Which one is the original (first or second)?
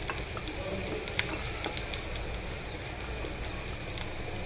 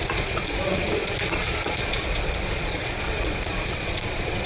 first